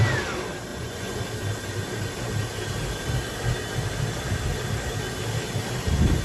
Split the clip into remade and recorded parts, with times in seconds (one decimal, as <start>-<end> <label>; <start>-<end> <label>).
0.0-0.7 recorded; 0.7-1.2 remade; 1.2-6.2 recorded